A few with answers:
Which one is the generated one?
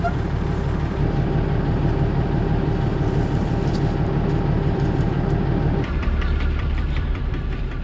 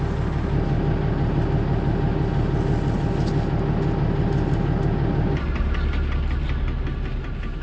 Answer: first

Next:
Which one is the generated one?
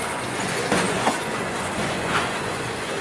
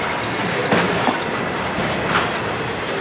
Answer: first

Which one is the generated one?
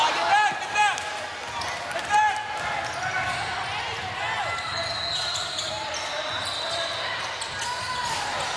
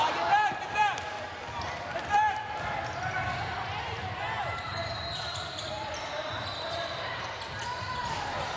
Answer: second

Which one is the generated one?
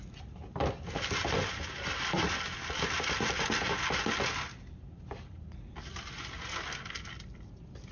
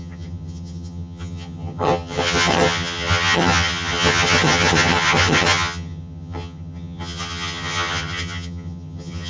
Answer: second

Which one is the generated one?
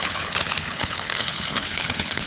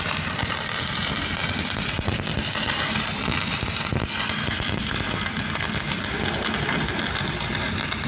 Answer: first